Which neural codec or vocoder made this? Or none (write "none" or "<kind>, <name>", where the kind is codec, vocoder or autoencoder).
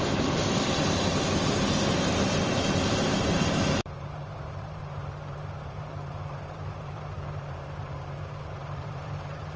vocoder, BigVGAN v2